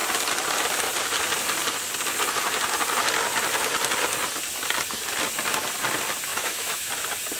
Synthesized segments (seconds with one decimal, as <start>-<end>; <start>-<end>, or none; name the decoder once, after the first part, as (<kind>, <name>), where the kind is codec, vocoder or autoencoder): 6.3-6.9 (autoencoder, DAC-VAE)